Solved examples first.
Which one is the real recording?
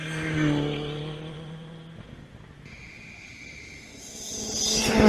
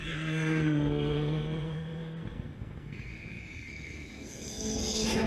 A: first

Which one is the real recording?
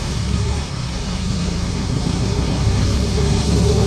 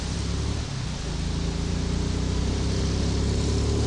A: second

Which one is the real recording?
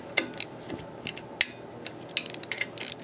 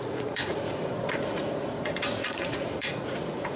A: first